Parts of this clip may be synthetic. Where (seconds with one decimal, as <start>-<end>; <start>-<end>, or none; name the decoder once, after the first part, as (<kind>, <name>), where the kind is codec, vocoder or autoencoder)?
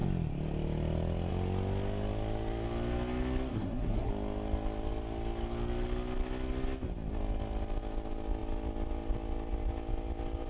3.5-4.1 (codec, SNAC)